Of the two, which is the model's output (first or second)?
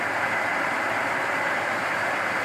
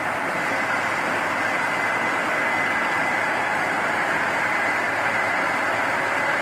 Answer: first